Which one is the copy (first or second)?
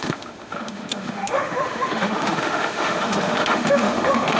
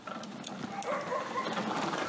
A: first